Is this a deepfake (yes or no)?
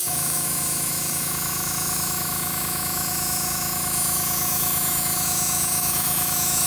yes